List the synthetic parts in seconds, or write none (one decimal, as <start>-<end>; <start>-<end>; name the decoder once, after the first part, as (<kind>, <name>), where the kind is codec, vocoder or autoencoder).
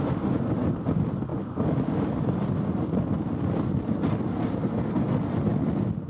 none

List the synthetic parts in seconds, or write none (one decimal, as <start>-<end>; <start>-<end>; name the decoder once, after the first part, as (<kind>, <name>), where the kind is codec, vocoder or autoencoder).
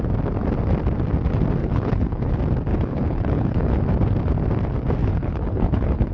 1.6-2.3 (codec, HILCodec); 2.7-3.7; 5.0-6.1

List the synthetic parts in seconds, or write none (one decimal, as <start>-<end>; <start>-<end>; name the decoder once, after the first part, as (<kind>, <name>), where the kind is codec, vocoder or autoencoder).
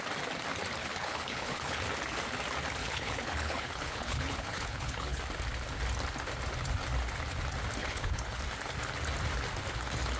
0.8-1.8 (codec, HILCodec); 2.8-5.2; 7.8-8.4